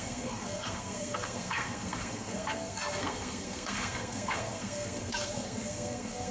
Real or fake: fake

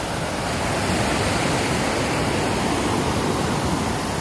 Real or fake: real